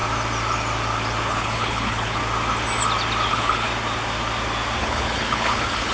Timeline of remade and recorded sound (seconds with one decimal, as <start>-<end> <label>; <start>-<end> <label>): 0.0-1.3 recorded; 1.3-2.2 remade; 2.2-3.3 recorded; 3.3-3.7 remade; 3.7-4.8 recorded; 4.8-5.9 remade